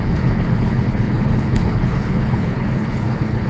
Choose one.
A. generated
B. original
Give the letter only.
A